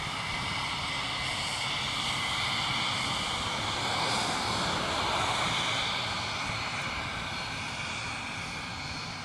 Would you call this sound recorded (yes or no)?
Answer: yes